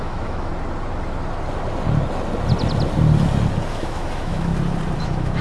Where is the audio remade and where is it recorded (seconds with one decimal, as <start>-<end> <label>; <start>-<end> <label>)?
0.0-0.5 remade; 0.5-3.7 recorded; 3.7-4.5 remade; 4.5-5.0 recorded; 5.0-5.4 remade